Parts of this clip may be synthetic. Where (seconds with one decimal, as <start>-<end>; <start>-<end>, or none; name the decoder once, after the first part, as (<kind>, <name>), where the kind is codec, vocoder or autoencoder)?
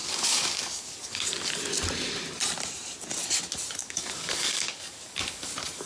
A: 0.0-1.5 (codec, DAC); 3.8-5.5